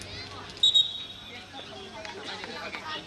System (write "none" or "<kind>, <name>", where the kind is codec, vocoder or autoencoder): none